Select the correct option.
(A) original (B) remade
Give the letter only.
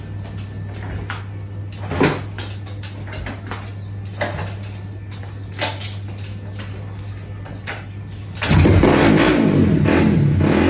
A